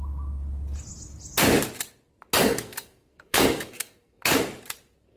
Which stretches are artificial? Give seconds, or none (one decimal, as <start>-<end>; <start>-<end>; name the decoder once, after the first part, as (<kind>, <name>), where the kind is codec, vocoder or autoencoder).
2.4-4.4 (codec, SNAC)